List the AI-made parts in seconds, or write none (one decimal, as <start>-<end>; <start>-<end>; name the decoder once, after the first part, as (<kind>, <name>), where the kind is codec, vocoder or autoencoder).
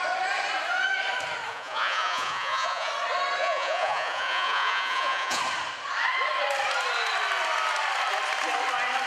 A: 1.5-2.9 (vocoder, Vocos); 3.4-5.4